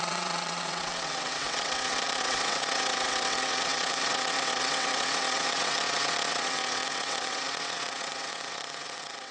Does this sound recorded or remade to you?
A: remade